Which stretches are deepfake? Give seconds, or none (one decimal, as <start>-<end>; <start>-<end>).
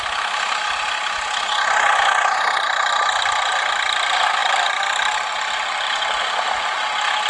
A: none